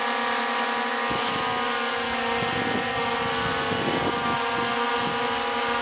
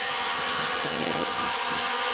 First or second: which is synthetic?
second